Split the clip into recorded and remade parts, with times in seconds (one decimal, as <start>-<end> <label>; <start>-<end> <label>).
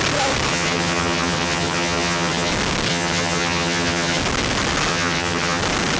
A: 0.0-0.5 recorded; 0.5-2.5 remade; 2.5-2.9 recorded; 2.9-4.2 remade; 4.2-4.9 recorded; 4.9-5.6 remade; 5.6-6.0 recorded